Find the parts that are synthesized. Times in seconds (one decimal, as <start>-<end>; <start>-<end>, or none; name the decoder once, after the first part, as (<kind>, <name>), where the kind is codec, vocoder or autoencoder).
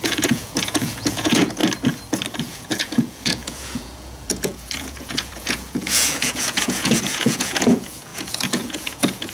0.0-1.6 (vocoder, Vocos); 2.4-9.3